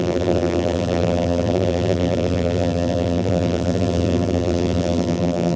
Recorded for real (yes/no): no